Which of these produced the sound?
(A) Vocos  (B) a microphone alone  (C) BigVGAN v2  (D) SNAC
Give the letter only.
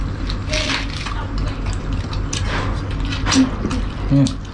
B